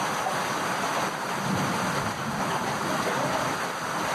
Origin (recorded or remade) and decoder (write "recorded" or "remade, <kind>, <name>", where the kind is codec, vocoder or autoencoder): recorded